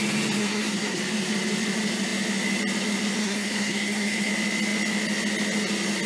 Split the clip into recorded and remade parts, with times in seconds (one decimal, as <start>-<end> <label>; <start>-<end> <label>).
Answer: 0.0-0.4 recorded; 0.4-1.0 remade; 1.0-3.2 recorded; 3.2-4.3 remade; 4.3-6.1 recorded